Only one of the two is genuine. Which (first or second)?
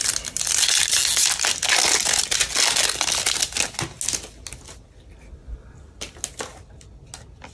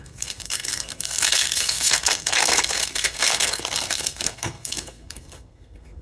first